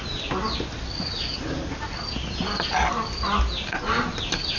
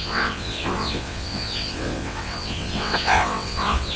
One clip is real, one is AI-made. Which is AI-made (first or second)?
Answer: second